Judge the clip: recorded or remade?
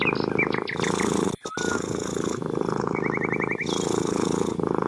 recorded